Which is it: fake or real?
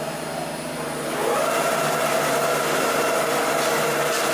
real